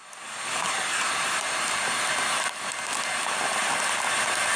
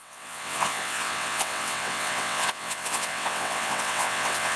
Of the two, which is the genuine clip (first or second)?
first